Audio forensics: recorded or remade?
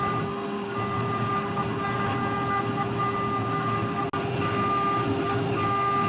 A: recorded